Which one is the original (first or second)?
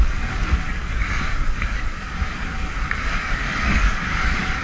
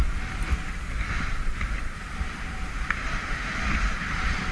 second